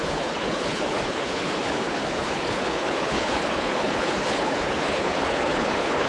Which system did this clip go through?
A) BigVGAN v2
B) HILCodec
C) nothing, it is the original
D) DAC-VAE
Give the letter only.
B